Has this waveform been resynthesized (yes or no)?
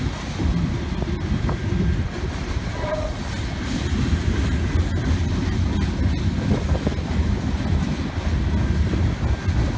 no